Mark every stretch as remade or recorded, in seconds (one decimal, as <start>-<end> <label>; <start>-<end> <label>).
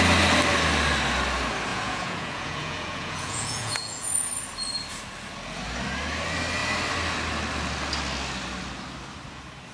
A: 0.0-1.7 recorded; 1.7-4.3 remade; 4.3-9.7 recorded